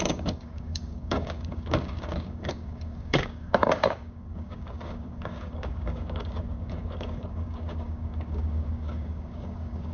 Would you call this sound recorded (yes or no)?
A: no